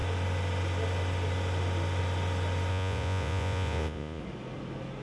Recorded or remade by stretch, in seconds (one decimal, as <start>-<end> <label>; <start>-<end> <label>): 0.0-2.7 recorded; 2.7-4.2 remade; 4.2-5.0 recorded